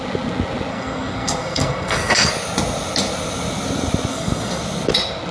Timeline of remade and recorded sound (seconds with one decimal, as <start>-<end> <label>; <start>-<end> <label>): 0.0-0.7 recorded; 0.7-2.3 remade; 2.3-4.1 recorded; 4.1-4.6 remade; 4.6-5.3 recorded